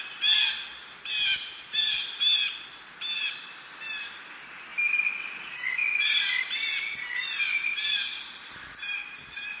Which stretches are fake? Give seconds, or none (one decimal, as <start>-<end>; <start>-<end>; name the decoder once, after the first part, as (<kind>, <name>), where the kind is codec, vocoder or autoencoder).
none